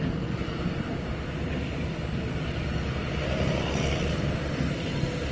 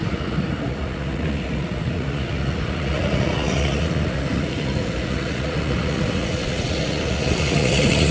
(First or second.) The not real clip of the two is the second